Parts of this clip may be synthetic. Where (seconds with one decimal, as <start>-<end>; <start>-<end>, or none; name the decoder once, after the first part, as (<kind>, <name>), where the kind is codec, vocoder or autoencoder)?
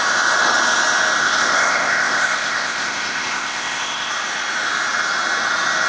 1.2-4.1 (codec, ZipCodec)